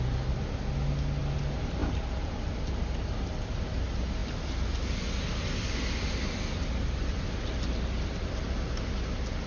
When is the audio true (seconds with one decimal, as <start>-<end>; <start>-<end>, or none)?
0.0-9.5

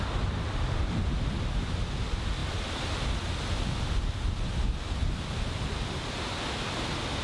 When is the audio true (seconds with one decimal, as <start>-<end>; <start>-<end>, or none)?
0.0-7.2